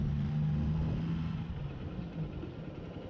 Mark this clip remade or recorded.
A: recorded